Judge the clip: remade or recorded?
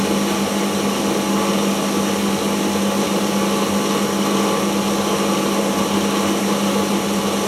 recorded